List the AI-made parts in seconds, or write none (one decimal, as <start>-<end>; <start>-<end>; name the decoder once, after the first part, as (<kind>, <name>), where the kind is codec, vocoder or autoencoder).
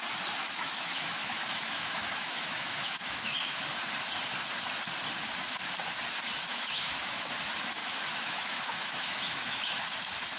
0.4-3.7 (autoencoder, DAC-VAE); 6.5-7.3; 7.8-9.8